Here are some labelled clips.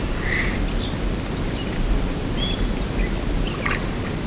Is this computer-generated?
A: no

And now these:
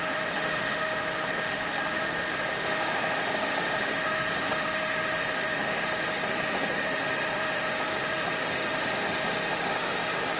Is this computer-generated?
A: yes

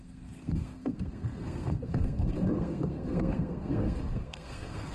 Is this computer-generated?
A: yes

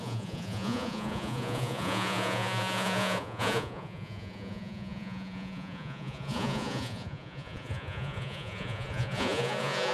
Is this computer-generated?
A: yes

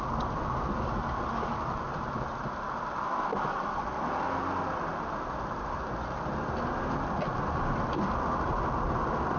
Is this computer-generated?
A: no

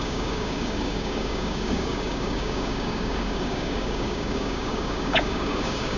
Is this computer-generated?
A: yes